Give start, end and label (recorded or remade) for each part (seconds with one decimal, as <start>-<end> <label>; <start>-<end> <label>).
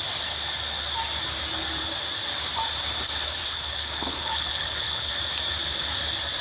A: 0.0-3.4 recorded; 3.4-5.1 remade; 5.1-6.4 recorded